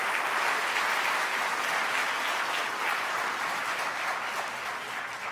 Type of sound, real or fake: real